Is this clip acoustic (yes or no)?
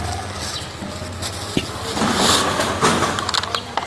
yes